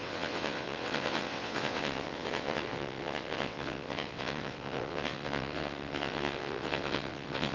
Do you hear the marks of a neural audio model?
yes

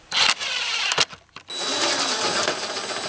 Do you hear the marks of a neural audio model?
no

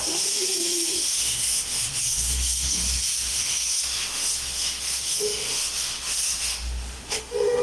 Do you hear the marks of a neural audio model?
yes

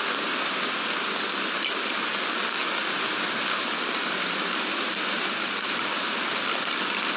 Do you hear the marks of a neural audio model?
no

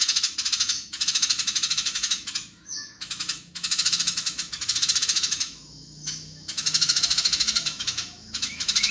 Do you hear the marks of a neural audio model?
yes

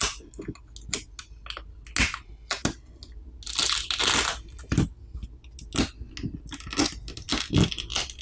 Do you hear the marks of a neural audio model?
no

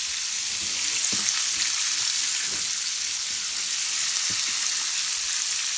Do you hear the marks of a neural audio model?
no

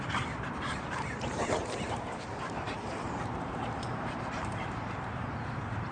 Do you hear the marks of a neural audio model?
yes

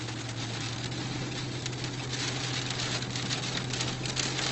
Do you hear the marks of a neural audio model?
no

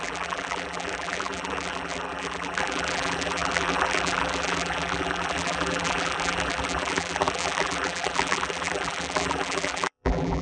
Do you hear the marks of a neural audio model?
yes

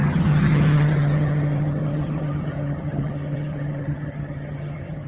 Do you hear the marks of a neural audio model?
yes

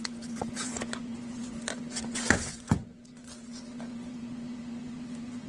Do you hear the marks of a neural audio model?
yes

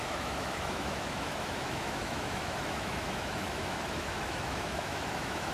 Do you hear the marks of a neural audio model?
yes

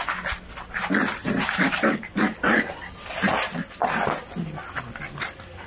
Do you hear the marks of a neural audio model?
no